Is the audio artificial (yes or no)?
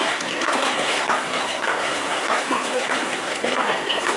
yes